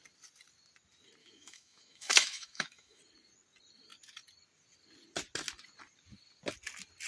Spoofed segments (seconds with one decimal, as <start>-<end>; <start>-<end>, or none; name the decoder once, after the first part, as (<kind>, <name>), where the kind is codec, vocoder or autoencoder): 1.2-3.0 (autoencoder, DAC-VAE)